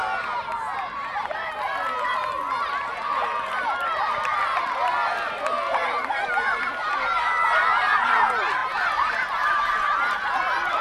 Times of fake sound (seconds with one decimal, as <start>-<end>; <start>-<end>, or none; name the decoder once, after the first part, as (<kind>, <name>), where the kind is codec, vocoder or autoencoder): none